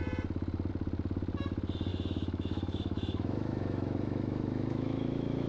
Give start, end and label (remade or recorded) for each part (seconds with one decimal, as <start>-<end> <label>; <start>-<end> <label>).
0.0-1.9 recorded; 1.9-5.5 remade